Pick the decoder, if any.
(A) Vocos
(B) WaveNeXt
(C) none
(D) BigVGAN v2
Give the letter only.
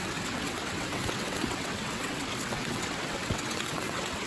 B